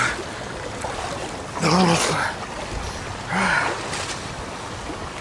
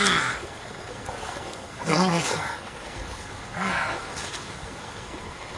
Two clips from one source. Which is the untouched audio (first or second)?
first